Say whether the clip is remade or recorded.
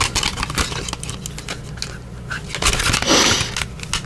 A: recorded